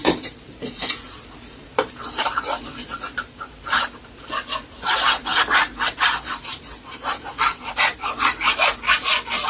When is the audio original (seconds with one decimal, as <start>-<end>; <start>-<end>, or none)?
3.8-5.3; 8.5-9.5